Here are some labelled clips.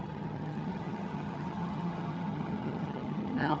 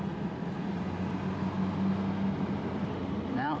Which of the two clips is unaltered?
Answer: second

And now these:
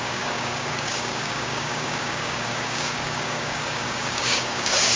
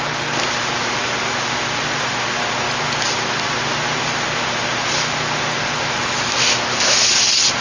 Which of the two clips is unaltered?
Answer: second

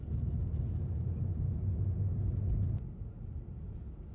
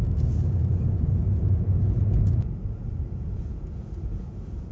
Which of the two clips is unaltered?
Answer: first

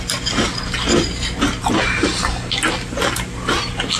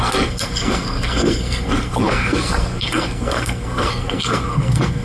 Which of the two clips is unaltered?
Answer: first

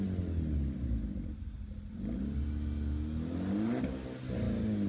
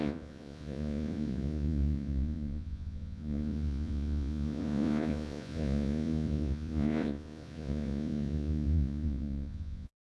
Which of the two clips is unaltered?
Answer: first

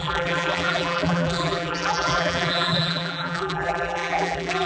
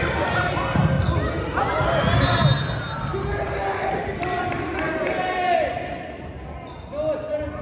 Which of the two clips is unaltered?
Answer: second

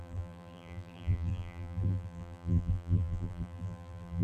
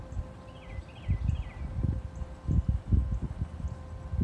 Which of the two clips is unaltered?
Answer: second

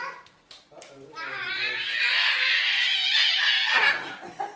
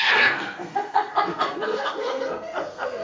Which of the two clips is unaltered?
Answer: first